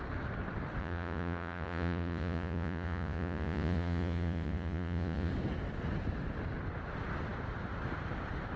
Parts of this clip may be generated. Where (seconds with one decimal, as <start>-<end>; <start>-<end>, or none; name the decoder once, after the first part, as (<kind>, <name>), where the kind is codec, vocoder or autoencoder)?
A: 0.8-5.3 (vocoder, Vocos)